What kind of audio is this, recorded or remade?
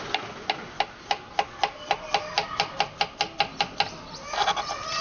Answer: recorded